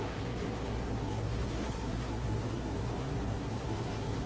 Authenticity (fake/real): fake